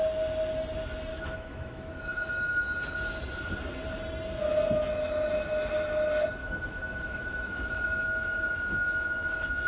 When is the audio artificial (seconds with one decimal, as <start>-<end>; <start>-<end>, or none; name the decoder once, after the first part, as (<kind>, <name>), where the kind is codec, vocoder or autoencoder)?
1.1-1.9 (autoencoder, DAC-VAE); 6.4-9.7